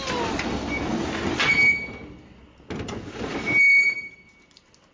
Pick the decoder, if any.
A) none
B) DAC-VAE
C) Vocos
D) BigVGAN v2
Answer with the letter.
A